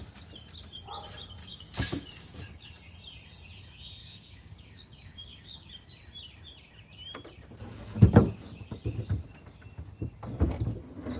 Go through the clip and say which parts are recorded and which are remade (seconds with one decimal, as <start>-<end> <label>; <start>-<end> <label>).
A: 0.0-1.4 recorded; 1.4-2.7 remade; 2.7-4.0 recorded; 4.0-5.7 remade; 5.7-11.2 recorded